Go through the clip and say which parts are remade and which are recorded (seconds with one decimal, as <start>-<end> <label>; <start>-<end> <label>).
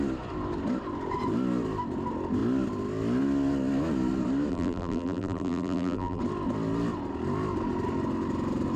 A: 0.0-4.5 recorded; 4.5-6.2 remade; 6.2-8.8 recorded